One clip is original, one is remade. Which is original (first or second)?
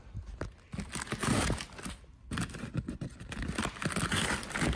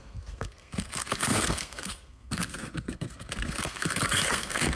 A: first